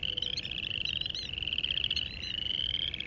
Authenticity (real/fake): real